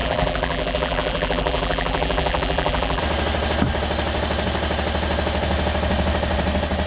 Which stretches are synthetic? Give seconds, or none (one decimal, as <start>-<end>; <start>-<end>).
0.0-3.0